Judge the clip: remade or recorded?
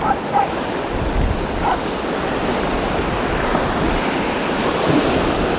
recorded